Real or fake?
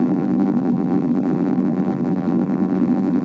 fake